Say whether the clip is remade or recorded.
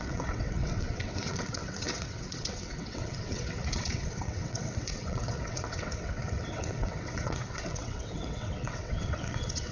remade